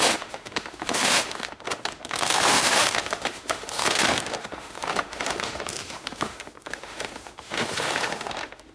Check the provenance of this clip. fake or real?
fake